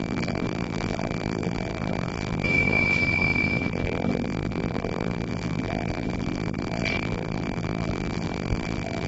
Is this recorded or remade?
remade